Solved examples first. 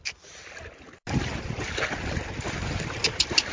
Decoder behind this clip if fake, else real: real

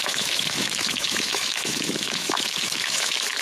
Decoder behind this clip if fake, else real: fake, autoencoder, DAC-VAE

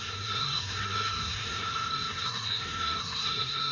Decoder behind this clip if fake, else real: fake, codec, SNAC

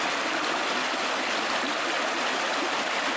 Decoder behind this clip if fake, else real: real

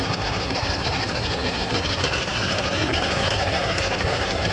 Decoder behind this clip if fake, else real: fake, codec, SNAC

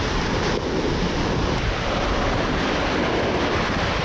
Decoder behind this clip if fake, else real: real